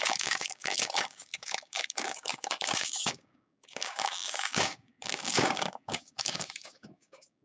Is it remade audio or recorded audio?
remade